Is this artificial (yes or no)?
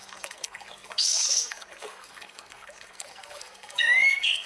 yes